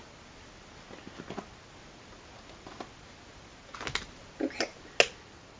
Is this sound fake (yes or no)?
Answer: no